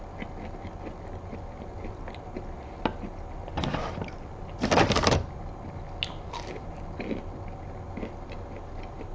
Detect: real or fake real